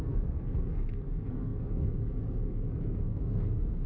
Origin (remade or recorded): remade